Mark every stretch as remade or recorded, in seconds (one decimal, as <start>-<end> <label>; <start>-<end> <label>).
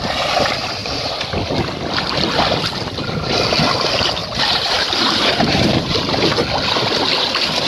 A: 0.0-4.2 recorded; 4.2-6.1 remade; 6.1-7.7 recorded